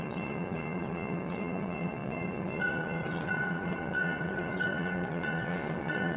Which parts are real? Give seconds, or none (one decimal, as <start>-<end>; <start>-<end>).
none